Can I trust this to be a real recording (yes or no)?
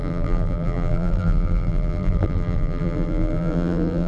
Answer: no